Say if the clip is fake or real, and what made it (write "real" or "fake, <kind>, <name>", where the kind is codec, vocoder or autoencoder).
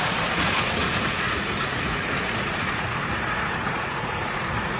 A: fake, vocoder, Vocos